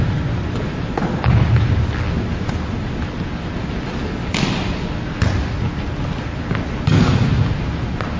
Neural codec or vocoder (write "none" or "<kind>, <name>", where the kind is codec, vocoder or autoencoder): none